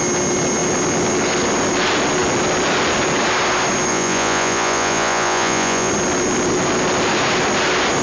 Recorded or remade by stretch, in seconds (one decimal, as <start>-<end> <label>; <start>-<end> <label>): 0.0-3.9 recorded; 3.9-5.9 remade; 5.9-8.0 recorded